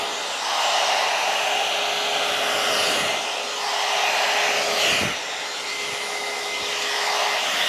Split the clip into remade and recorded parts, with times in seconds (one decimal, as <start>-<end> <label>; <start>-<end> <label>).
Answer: 0.0-5.7 recorded; 5.7-7.2 remade; 7.2-7.7 recorded